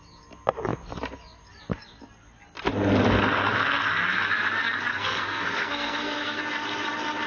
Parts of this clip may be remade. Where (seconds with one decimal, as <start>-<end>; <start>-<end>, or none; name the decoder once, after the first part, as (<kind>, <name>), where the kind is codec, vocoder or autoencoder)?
4.9-6.4 (codec, SNAC)

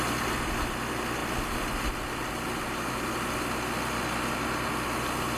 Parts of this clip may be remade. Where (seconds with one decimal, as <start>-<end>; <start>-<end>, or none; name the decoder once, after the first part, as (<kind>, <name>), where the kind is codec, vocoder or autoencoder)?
none

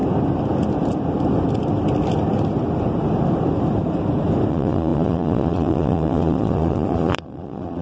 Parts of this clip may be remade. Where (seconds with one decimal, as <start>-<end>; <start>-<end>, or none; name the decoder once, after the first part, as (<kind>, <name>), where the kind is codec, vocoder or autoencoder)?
4.5-7.8 (vocoder, Vocos)

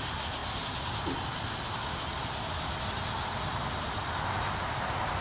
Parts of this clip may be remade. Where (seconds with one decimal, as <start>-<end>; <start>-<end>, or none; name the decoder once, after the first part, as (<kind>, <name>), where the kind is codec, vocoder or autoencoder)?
none